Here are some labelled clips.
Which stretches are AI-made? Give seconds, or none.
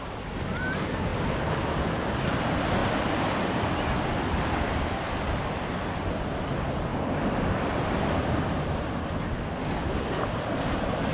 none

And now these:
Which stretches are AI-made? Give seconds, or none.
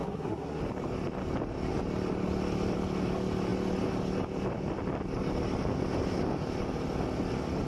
0.0-0.6 (codec, SNAC)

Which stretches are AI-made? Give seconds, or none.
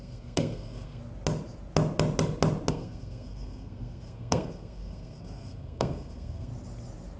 0.0-1.0 (codec, SNAC); 2.7-6.5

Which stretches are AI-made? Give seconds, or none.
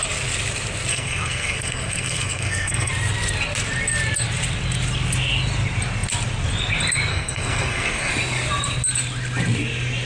0.9-2.9 (codec, SNAC); 7.1-8.1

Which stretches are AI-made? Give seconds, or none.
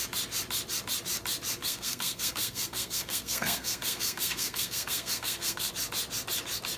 1.6-5.7 (codec, SNAC)